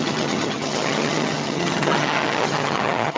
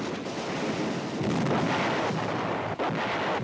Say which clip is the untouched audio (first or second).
second